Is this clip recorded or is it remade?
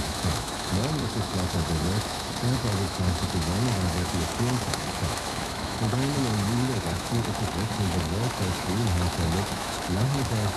remade